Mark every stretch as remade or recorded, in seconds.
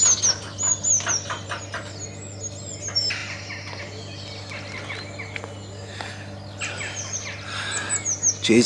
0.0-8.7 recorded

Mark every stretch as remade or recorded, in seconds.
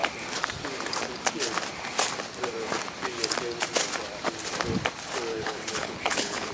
0.0-5.3 recorded; 5.3-6.5 remade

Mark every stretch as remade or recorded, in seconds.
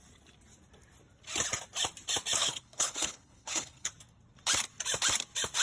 0.0-2.4 recorded; 2.4-3.9 remade; 3.9-5.6 recorded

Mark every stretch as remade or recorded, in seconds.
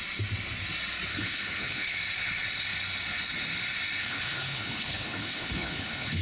0.0-1.1 recorded; 1.1-2.0 remade; 2.0-4.0 recorded; 4.0-6.2 remade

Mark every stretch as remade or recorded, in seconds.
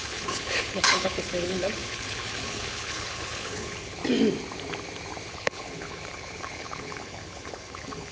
0.0-4.0 remade; 4.0-5.3 recorded; 5.3-8.1 remade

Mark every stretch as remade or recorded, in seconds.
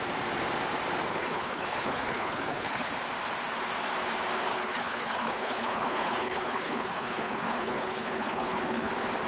0.0-1.1 recorded; 1.1-2.9 remade; 2.9-4.5 recorded; 4.5-8.9 remade; 8.9-9.3 recorded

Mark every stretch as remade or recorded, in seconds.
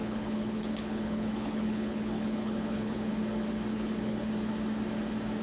0.0-3.2 remade; 3.2-3.7 recorded; 3.7-4.3 remade; 4.3-5.4 recorded